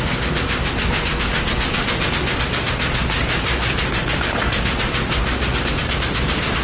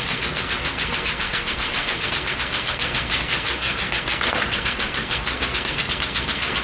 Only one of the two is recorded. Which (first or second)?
first